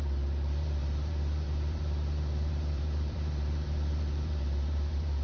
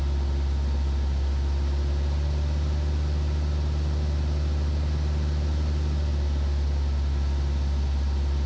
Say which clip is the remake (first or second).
first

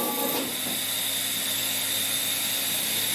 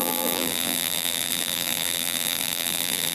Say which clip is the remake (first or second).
second